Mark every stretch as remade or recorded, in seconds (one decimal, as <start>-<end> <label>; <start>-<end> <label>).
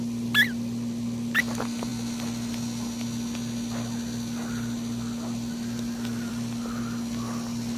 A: 0.0-7.8 recorded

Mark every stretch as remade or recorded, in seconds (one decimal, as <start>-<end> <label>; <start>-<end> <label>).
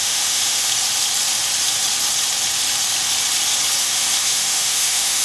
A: 0.0-0.7 remade; 0.7-3.8 recorded; 3.8-5.2 remade